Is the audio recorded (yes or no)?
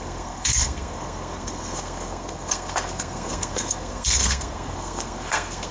no